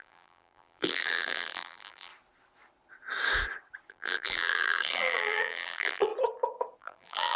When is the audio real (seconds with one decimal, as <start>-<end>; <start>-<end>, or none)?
2.1-3.9; 6.1-6.8